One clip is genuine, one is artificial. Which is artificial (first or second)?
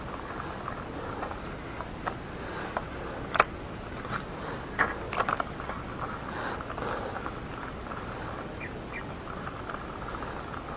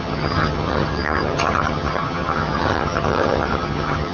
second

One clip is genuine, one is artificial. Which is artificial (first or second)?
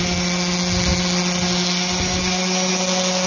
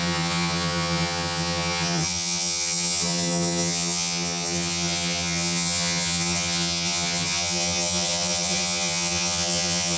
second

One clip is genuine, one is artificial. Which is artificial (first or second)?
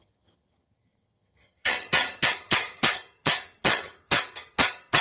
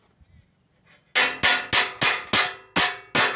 first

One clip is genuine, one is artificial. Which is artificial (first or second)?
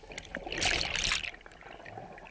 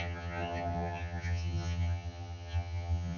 second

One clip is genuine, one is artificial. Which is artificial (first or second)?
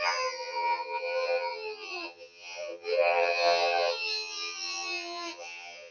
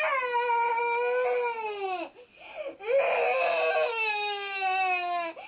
first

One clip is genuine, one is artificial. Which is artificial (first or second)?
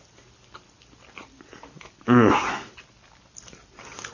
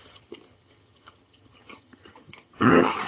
second